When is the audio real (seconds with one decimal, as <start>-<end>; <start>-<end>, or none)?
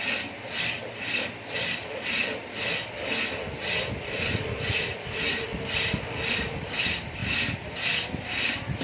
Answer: 0.0-8.8